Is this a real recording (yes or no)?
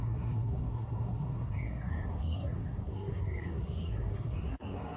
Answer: no